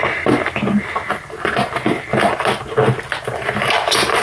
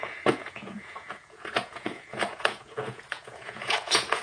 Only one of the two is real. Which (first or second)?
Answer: first